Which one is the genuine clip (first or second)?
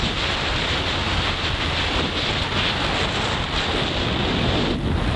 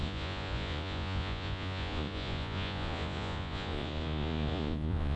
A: first